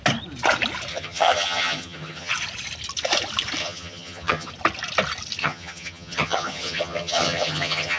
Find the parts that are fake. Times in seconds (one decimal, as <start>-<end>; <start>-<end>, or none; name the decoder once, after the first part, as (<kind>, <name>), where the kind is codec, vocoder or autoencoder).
0.9-2.3 (vocoder, HiFi-GAN); 3.6-4.5; 5.4-8.0